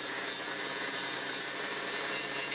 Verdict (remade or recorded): recorded